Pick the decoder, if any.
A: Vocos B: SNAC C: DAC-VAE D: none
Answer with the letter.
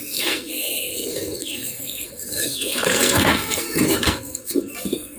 B